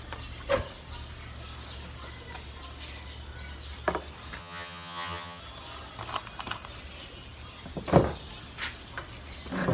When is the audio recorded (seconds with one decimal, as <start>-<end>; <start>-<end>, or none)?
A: 0.0-4.4; 5.4-9.7